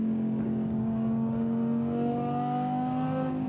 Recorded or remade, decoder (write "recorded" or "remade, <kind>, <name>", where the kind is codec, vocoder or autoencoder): remade, codec, DAC